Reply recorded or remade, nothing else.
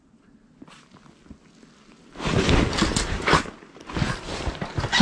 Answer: recorded